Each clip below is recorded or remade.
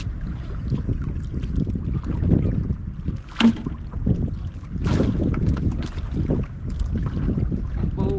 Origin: recorded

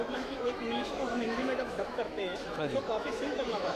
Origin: remade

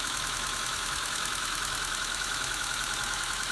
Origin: remade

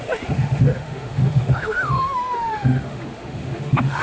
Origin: remade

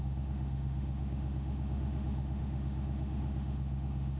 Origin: remade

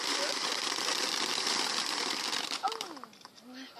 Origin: recorded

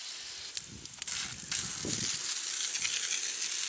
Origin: recorded